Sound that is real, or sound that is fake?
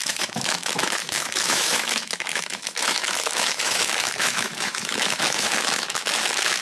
fake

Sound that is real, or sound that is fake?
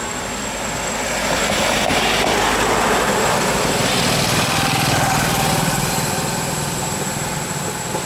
real